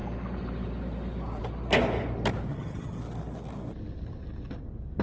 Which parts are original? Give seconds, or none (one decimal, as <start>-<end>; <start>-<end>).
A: 0.0-2.5; 3.0-5.0

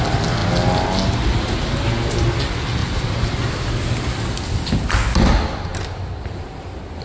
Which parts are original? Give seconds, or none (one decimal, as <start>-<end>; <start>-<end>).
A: 0.0-7.0

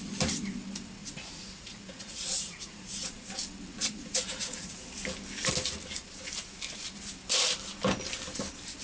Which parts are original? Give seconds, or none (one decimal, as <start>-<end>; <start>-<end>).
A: 0.0-1.0; 3.3-3.7; 4.9-8.8

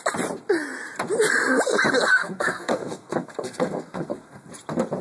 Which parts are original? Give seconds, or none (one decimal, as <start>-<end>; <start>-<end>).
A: 0.0-2.1; 4.5-5.0

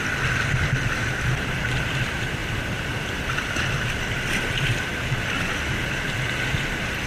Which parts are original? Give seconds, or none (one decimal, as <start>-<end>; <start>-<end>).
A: 0.0-7.1